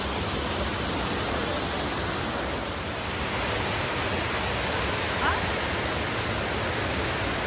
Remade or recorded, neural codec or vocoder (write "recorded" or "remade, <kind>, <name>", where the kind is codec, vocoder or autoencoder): recorded